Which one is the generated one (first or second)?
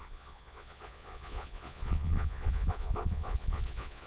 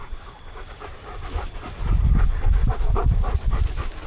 first